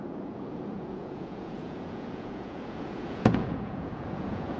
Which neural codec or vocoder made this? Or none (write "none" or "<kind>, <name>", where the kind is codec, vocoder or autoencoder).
vocoder, Vocos